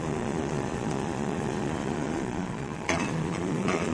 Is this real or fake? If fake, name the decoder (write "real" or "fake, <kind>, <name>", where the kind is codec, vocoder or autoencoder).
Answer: fake, vocoder, Vocos